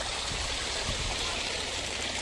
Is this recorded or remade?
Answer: remade